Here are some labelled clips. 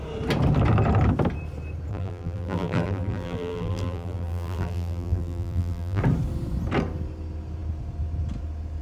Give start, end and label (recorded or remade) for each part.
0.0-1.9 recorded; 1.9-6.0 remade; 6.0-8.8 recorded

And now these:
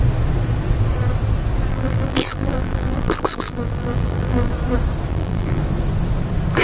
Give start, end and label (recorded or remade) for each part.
0.0-1.7 recorded; 1.7-4.5 remade; 4.5-5.1 recorded; 5.1-5.6 remade; 5.6-6.6 recorded

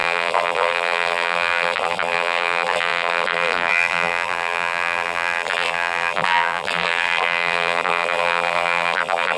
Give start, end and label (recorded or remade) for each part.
0.0-9.4 remade

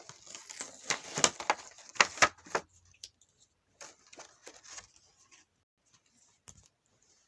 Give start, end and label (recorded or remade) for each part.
0.0-7.3 recorded